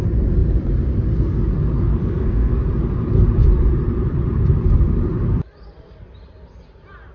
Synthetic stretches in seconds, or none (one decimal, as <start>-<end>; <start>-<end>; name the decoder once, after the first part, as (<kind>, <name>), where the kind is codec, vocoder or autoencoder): 1.9-2.6 (codec, SNAC)